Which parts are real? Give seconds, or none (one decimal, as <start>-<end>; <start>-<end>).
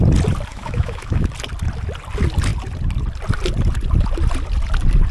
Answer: 0.0-0.5; 1.3-5.1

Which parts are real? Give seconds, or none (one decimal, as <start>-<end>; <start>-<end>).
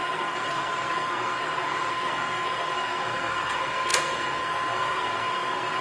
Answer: none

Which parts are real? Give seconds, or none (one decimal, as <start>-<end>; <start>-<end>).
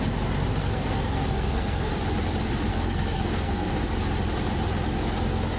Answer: 0.0-0.6; 1.9-2.7; 3.7-5.6